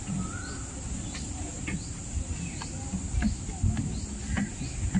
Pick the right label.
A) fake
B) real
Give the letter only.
B